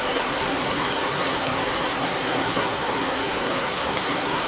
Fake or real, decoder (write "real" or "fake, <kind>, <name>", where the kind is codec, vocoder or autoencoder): fake, codec, SNAC